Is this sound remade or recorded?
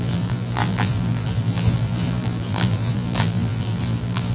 remade